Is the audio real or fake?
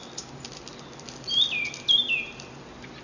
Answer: real